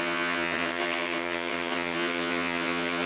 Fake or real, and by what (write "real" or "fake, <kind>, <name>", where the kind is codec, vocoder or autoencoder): fake, vocoder, HiFi-GAN